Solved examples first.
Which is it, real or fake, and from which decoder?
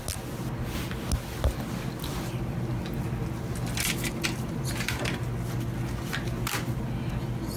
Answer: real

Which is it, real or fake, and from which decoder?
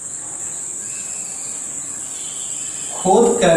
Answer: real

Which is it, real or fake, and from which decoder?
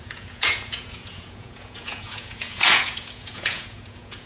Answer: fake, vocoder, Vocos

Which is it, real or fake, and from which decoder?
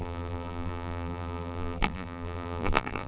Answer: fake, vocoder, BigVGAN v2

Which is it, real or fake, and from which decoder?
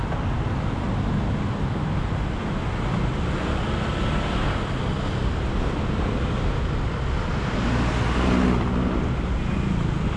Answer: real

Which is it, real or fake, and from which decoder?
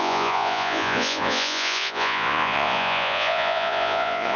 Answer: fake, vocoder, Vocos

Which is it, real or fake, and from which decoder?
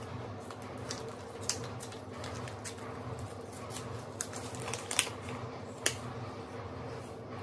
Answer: real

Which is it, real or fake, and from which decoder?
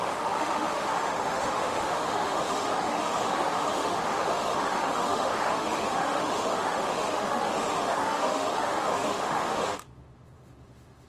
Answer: fake, autoencoder, DAC-VAE